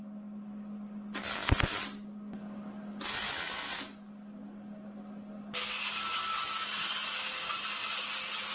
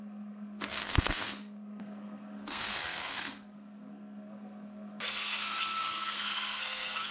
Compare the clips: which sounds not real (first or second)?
second